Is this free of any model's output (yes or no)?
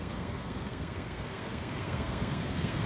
no